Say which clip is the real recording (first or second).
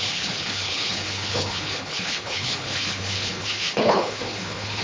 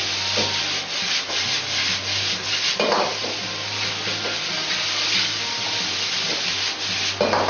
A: second